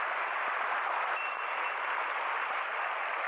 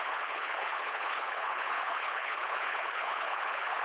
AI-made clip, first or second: second